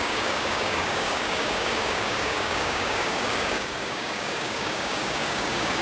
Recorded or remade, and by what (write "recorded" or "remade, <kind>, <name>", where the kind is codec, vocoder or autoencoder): remade, codec, DAC